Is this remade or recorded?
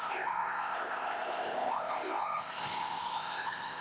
remade